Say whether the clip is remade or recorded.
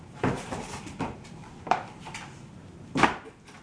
remade